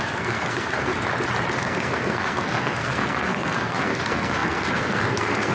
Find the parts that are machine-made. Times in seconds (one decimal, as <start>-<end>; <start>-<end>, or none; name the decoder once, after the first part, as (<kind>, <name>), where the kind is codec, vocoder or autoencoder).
0.0-0.9 (codec, SNAC); 1.6-5.5